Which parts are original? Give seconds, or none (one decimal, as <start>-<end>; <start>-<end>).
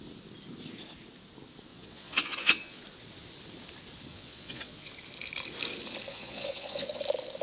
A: 0.0-1.7; 2.8-4.1; 4.9-6.1; 7.0-7.4